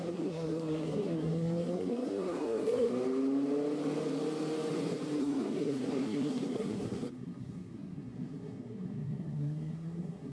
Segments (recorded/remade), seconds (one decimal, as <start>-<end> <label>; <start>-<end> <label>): 0.0-2.9 remade; 2.9-5.2 recorded; 5.2-10.3 remade